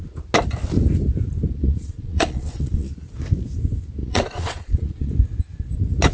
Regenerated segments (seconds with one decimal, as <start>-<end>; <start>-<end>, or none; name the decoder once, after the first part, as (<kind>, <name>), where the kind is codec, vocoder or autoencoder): 1.6-2.9 (vocoder, Vocos); 4.0-5.1